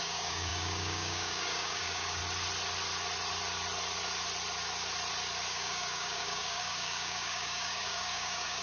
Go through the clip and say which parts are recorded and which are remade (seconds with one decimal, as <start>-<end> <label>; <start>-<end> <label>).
0.0-2.2 remade; 2.2-5.5 recorded; 5.5-8.6 remade